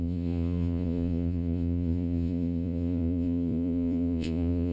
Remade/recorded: remade